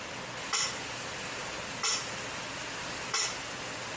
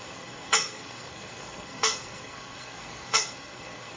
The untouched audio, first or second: first